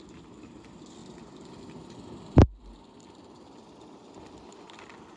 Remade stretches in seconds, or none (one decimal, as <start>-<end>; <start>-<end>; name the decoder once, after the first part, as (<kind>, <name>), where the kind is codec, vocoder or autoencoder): none